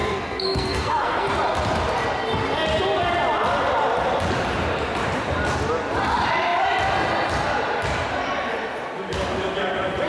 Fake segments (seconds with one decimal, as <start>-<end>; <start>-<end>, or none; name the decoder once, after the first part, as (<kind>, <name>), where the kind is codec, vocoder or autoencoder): 0.0-1.3 (codec, SNAC)